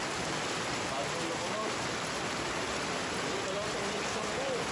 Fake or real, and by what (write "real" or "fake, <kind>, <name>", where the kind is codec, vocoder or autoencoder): real